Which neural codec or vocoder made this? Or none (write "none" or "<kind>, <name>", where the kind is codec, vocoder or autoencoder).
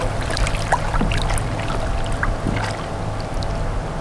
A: none